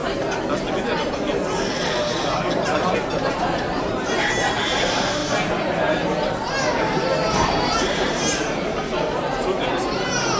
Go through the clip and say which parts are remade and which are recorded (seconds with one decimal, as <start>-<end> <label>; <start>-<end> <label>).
0.0-3.1 recorded; 3.1-5.2 remade; 5.2-6.5 recorded; 6.5-10.4 remade